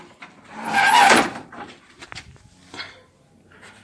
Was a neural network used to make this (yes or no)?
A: yes